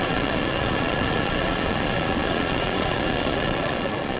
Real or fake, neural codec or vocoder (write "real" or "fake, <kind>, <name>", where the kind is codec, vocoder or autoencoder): fake, vocoder, Vocos